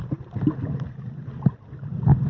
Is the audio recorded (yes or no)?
yes